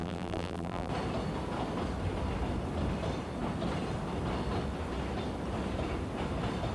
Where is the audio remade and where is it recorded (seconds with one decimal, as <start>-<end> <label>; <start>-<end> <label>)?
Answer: 0.0-0.9 remade; 0.9-6.7 recorded